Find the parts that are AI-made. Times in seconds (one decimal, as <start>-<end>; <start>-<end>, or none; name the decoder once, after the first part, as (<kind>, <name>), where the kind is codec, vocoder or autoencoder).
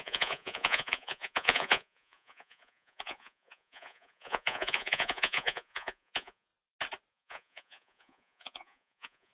0.0-6.5 (vocoder, Vocos); 7.1-9.3